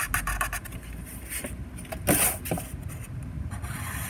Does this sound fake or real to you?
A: real